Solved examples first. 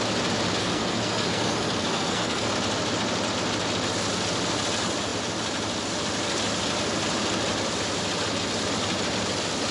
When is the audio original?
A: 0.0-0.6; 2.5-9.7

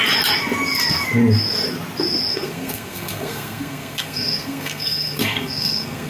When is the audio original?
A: 0.0-2.3

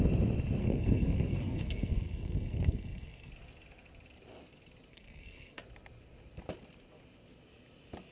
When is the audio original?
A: 0.0-0.6; 3.3-4.9; 5.6-8.1

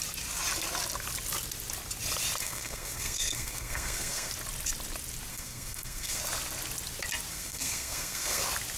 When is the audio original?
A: 0.0-2.4; 4.3-5.3; 6.2-7.3; 8.4-8.8

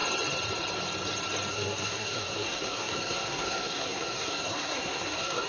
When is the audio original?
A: 0.0-1.5

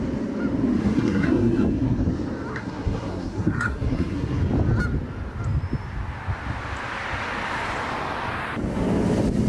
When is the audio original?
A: 0.0-0.8; 2.1-2.5; 4.4-9.5